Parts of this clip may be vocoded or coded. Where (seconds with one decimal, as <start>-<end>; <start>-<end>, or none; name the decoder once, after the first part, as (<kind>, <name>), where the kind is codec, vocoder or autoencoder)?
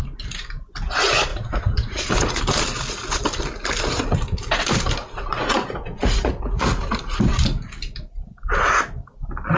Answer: 1.3-2.4 (vocoder, Vocos); 5.0-7.0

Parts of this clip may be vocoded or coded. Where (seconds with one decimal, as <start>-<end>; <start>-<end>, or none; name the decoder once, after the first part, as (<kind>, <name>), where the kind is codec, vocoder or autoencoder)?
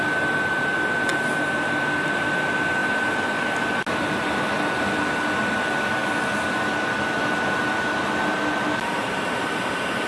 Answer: none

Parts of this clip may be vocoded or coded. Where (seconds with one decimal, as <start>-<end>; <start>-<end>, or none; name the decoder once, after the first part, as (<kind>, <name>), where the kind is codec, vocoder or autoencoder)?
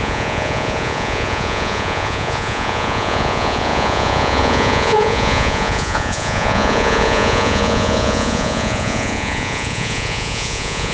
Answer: 0.0-10.9 (vocoder, Vocos)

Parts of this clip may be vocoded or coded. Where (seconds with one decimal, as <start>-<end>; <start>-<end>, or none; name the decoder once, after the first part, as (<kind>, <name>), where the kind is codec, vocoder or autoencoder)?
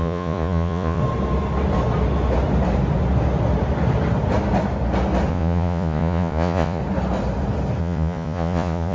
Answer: 0.0-1.0 (vocoder, Vocos); 5.3-6.8; 7.8-8.9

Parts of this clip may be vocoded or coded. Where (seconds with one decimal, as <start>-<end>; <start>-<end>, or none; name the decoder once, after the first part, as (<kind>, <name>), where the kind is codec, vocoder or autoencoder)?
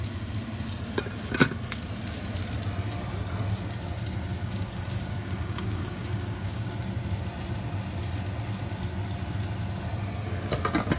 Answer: 4.4-6.7 (codec, DAC)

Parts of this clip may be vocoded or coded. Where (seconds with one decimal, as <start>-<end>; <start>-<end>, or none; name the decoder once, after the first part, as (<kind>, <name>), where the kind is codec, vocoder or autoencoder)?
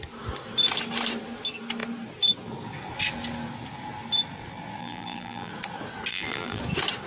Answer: 4.8-5.5 (vocoder, BigVGAN v2); 6.1-6.6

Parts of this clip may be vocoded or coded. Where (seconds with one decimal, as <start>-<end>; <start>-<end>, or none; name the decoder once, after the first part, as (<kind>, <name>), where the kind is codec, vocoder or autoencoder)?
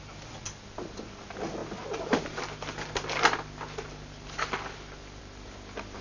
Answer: none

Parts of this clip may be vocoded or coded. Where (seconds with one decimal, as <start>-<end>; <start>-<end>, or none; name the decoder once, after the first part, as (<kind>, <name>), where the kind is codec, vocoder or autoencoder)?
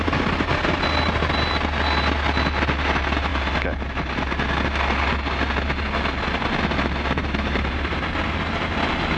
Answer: 7.2-7.9 (vocoder, BigVGAN v2)